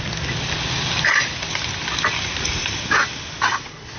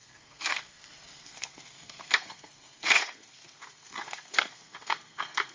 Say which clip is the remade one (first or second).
second